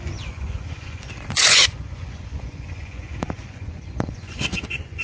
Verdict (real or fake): fake